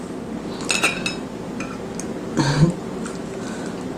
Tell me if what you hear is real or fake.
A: real